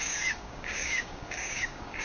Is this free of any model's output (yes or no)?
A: no